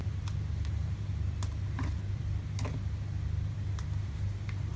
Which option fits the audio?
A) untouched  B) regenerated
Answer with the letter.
A